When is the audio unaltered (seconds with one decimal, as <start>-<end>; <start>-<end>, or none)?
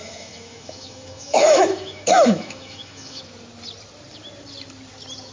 3.2-5.3